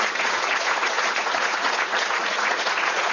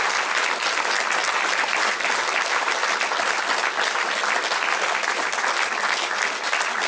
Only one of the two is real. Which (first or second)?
second